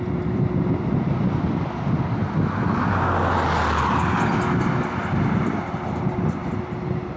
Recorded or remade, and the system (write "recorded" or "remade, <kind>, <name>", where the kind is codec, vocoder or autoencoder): recorded